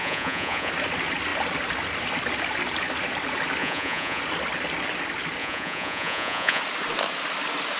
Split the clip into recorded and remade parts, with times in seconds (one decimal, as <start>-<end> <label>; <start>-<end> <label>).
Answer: 0.0-0.7 remade; 0.7-3.6 recorded; 3.6-4.2 remade; 4.2-5.4 recorded; 5.4-6.6 remade; 6.6-7.8 recorded